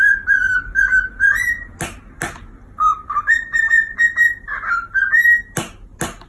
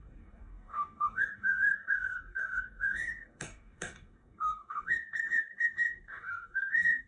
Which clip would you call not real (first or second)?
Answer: second